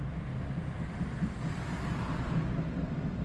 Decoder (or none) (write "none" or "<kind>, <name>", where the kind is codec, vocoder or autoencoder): none